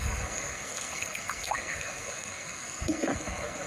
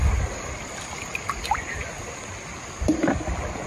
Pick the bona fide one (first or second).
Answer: second